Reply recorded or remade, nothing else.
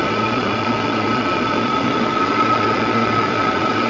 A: remade